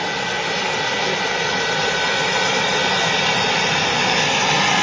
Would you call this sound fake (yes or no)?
yes